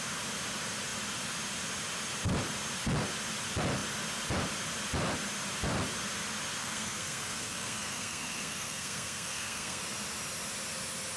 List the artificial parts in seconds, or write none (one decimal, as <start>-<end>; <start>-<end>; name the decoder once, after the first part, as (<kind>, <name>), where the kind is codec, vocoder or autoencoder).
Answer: 6.6-9.8 (codec, SNAC)